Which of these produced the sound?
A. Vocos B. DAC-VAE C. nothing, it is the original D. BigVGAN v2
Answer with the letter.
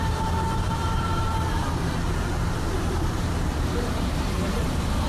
D